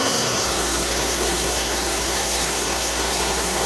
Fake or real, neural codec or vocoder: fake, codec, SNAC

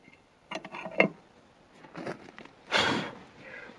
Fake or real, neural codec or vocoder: real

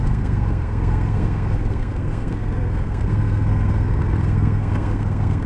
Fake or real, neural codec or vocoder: fake, codec, SNAC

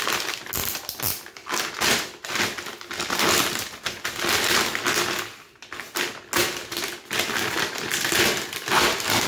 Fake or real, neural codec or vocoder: real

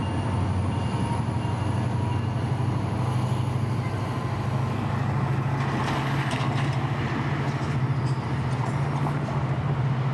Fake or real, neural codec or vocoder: real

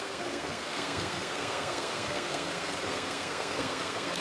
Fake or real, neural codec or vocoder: fake, codec, SNAC